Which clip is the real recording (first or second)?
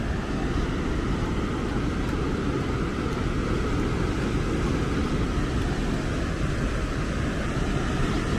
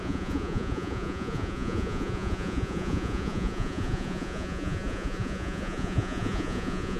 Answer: first